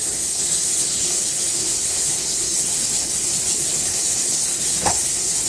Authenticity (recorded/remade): remade